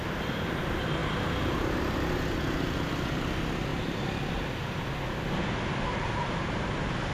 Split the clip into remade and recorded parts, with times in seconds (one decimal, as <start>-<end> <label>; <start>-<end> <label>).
0.0-7.1 recorded